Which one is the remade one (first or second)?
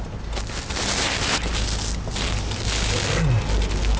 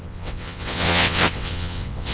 second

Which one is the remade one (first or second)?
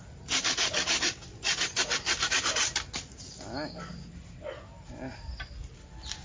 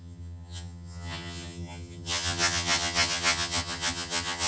second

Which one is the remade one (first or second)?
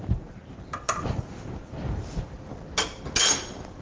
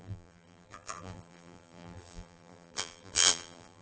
second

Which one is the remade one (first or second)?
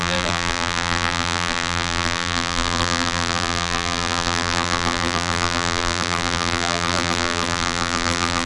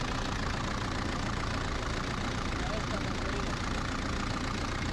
first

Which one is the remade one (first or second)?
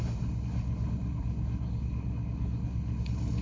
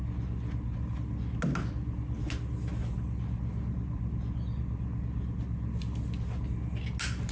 first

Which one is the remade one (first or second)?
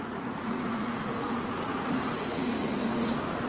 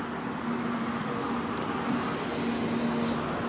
first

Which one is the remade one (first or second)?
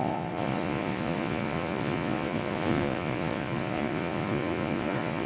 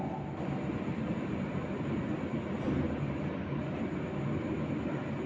first